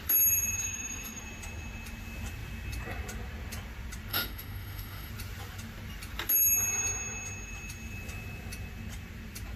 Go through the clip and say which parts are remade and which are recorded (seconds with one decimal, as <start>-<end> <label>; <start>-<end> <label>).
0.0-0.6 recorded; 0.6-1.2 remade; 1.2-4.1 recorded; 4.1-5.1 remade; 5.1-9.6 recorded